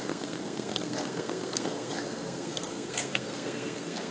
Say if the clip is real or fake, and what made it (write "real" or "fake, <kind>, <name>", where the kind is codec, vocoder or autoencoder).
fake, codec, SNAC